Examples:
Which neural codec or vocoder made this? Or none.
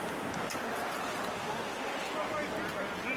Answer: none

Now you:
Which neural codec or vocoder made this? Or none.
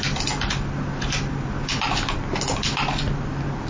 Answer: none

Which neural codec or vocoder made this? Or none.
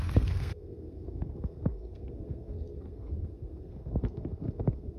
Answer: codec, SNAC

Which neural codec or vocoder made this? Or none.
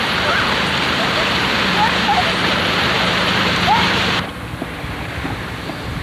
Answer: vocoder, BigVGAN v2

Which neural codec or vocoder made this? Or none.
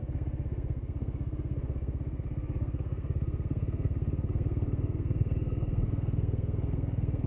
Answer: codec, SNAC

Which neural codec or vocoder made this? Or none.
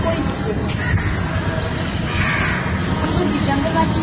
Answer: none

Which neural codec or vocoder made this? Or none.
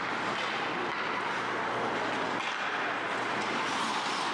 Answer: none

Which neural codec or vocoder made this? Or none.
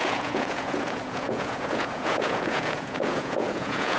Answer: vocoder, Vocos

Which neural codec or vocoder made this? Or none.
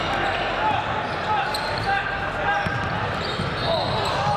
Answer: none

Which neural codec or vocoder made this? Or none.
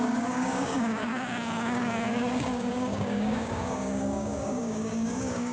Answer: codec, DAC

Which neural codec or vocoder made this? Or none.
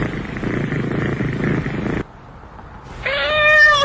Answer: none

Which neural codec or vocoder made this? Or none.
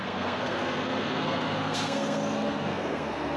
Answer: codec, SNAC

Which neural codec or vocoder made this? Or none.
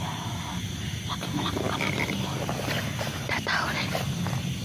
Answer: none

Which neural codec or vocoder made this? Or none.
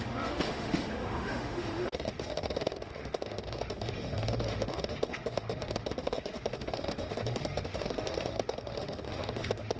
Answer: autoencoder, DAC-VAE